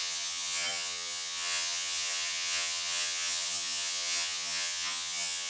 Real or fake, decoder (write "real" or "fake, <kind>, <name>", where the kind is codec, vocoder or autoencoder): fake, vocoder, HiFi-GAN